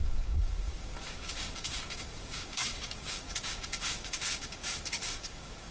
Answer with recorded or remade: remade